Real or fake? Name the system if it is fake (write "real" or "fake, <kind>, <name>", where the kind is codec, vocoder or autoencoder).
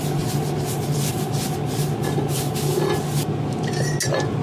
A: real